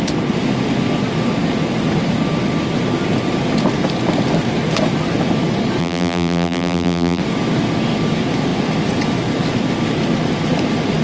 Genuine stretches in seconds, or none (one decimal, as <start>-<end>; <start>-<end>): 0.0-5.8; 7.2-11.0